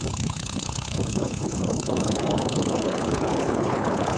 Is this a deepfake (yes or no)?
yes